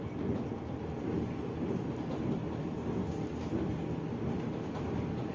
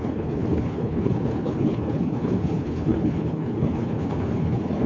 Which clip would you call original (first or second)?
first